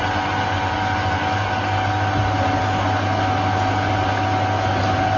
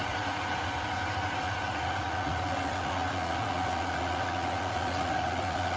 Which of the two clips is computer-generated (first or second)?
second